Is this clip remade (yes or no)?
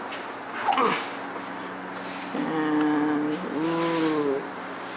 no